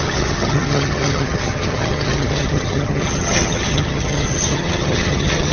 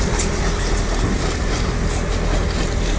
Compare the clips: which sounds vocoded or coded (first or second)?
first